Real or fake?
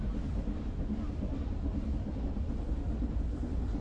real